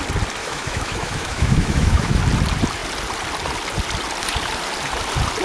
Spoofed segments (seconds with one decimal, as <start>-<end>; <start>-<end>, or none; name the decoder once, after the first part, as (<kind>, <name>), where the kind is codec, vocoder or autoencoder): 0.4-2.2 (autoencoder, DAC-VAE)

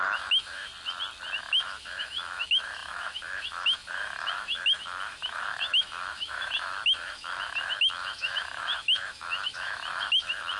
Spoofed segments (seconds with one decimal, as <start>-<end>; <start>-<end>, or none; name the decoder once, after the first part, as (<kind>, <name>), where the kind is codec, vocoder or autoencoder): 0.0-0.7 (autoencoder, DAC-VAE); 1.4-10.6

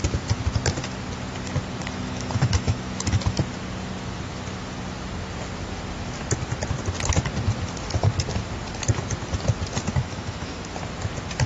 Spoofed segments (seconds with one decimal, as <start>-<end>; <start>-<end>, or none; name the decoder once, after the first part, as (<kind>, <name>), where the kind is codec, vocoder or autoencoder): 1.8-3.4 (autoencoder, DAC-VAE); 10.0-10.7

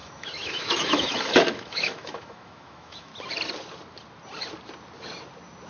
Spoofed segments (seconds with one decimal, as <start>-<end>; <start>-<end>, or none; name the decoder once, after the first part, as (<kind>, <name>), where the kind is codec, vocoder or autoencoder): 0.0-3.1 (autoencoder, DAC-VAE)

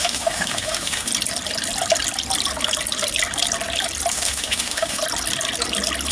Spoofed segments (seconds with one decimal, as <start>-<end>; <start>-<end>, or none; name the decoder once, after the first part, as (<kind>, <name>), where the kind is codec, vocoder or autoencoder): 0.0-1.1 (autoencoder, DAC-VAE); 4.1-5.0

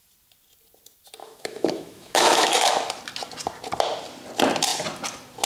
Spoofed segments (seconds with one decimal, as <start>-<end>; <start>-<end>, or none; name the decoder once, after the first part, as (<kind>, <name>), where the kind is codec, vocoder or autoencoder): 1.2-2.9 (autoencoder, DAC-VAE)

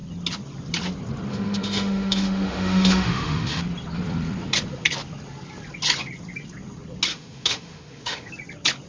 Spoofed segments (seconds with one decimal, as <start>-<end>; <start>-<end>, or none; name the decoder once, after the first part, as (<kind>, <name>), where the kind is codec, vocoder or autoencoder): 1.3-3.6 (autoencoder, DAC-VAE); 7.1-8.3